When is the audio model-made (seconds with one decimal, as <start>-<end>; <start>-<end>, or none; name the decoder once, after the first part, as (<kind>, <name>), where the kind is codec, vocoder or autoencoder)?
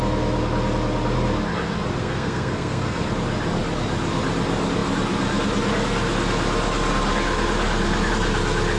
2.0-3.1 (codec, SNAC)